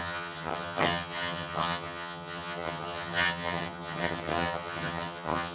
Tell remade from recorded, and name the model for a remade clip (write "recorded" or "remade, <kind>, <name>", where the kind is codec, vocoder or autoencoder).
remade, vocoder, HiFi-GAN